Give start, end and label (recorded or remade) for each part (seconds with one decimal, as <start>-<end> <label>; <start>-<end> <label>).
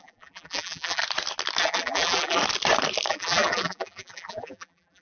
0.0-1.0 remade; 1.0-1.6 recorded; 1.6-2.4 remade; 2.4-3.1 recorded; 3.1-5.0 remade